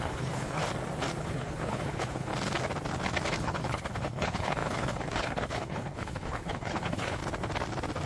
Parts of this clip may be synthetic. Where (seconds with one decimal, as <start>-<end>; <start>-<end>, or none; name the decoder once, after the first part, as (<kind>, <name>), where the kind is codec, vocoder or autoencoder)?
0.0-0.6 (codec, HILCodec); 1.2-2.3; 3.4-7.2

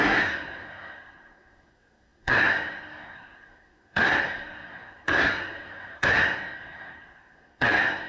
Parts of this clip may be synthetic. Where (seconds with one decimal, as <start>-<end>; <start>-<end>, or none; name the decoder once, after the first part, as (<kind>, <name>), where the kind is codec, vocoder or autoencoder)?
0.0-8.1 (codec, SNAC)

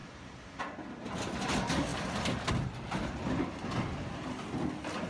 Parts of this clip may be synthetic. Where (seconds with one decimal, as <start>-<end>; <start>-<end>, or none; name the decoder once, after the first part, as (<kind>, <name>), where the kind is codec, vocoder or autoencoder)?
none

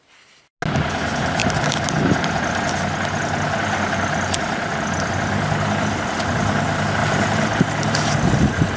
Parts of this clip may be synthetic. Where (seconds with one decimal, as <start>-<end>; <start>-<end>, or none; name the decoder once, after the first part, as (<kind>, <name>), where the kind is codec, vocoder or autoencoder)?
none

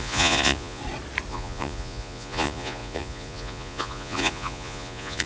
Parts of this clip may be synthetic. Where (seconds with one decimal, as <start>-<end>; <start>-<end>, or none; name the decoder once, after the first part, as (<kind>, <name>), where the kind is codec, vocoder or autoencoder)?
0.0-0.8 (vocoder, Vocos); 1.3-5.3